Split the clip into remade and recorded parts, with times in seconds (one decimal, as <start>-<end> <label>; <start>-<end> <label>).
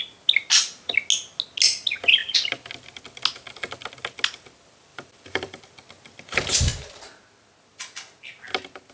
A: 0.0-4.9 recorded; 4.9-5.6 remade; 5.6-8.9 recorded